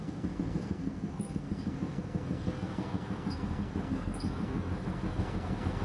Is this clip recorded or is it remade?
remade